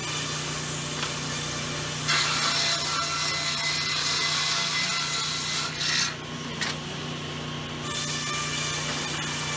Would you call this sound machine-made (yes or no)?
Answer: no